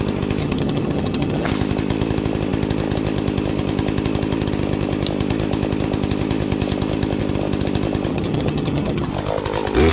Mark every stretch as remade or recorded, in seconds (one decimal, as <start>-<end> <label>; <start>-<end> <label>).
0.0-0.4 recorded; 0.4-1.5 remade; 1.5-8.1 recorded; 8.1-9.1 remade; 9.1-9.9 recorded